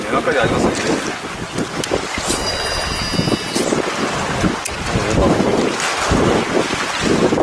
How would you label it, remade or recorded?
recorded